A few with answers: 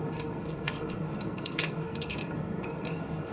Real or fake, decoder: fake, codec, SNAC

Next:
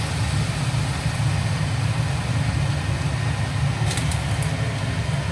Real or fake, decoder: real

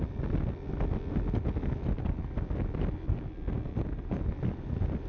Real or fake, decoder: real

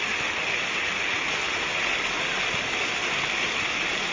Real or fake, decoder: real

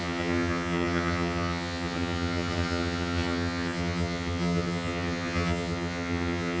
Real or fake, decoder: fake, vocoder, HiFi-GAN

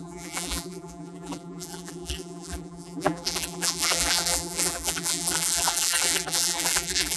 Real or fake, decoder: fake, vocoder, BigVGAN v2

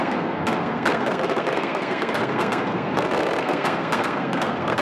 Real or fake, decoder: fake, codec, SNAC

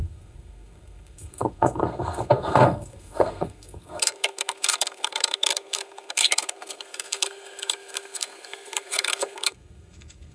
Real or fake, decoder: fake, codec, SNAC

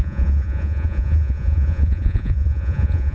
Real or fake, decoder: fake, vocoder, Vocos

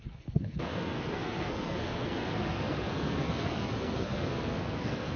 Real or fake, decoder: fake, codec, SNAC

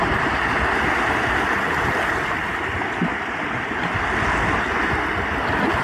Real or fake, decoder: real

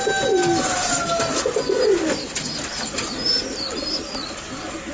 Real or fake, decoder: real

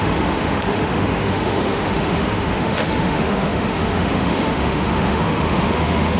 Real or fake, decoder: fake, autoencoder, DAC-VAE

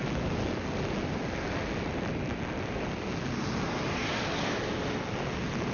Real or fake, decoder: real